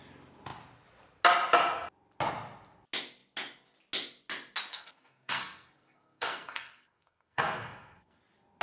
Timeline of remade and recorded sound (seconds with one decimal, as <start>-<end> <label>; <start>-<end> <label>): 0.0-4.7 recorded; 4.7-8.2 remade; 8.2-8.6 recorded